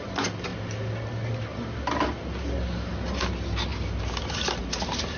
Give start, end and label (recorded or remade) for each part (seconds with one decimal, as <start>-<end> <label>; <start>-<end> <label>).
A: 0.0-5.2 recorded